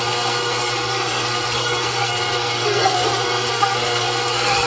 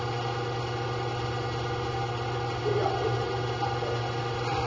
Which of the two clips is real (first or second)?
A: second